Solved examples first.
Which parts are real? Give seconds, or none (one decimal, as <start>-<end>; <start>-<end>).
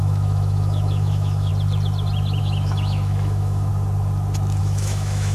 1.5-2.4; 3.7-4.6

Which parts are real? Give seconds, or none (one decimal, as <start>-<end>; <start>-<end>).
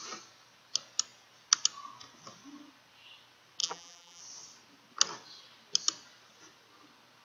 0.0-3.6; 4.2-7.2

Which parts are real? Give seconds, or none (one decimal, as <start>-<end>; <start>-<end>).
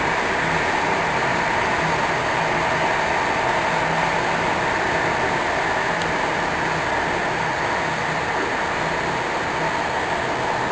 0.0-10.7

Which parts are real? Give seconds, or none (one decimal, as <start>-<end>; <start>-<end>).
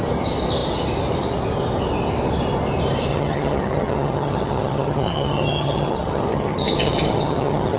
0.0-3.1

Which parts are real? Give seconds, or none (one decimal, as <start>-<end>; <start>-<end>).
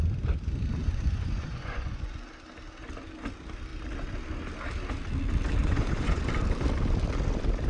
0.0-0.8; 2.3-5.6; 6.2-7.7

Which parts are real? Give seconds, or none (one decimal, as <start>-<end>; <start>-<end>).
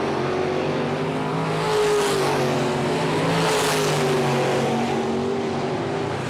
0.0-6.3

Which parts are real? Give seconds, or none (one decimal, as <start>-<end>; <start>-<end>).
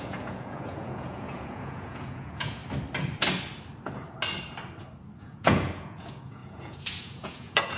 2.6-5.2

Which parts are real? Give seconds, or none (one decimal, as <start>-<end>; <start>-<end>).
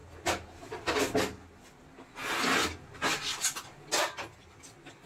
0.0-5.1